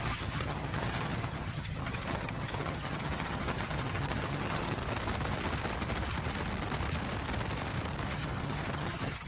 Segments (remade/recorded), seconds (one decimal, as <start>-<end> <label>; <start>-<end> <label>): 0.0-4.8 remade; 4.8-8.1 recorded; 8.1-9.3 remade